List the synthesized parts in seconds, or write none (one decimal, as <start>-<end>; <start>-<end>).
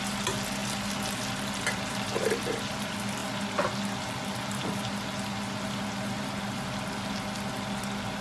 none